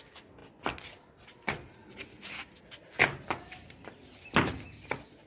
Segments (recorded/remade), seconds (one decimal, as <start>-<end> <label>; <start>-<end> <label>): 0.0-5.3 recorded